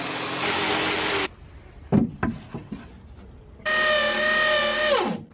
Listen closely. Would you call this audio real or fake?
real